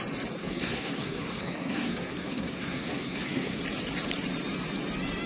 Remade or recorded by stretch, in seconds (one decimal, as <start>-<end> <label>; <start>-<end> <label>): 0.0-0.4 recorded; 0.4-3.6 remade; 3.6-5.3 recorded